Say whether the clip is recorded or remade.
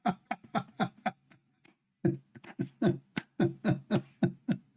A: recorded